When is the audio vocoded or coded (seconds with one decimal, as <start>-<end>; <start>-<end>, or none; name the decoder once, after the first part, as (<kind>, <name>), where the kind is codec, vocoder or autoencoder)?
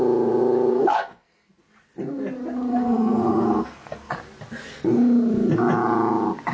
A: 0.7-1.5 (codec, SNAC); 2.7-4.1